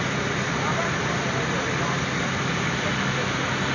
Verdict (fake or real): real